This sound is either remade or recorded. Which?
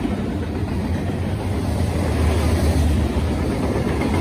recorded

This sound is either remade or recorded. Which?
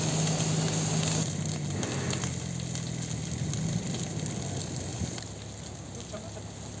recorded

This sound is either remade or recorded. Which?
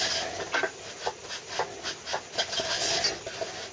recorded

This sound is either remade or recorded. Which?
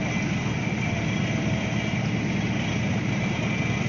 recorded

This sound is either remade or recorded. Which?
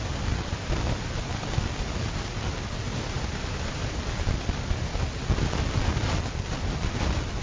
recorded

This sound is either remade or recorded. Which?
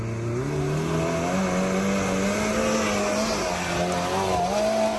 recorded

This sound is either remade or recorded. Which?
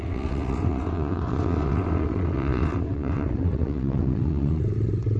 remade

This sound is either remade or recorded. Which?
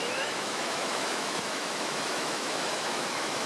remade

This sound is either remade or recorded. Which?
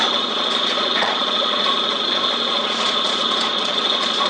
remade